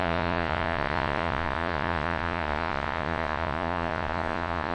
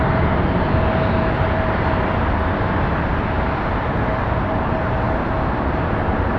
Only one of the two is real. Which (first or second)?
second